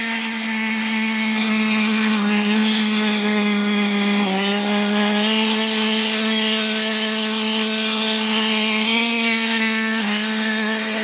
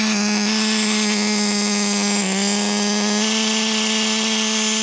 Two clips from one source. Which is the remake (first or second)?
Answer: first